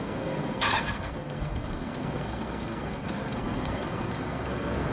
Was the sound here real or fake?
fake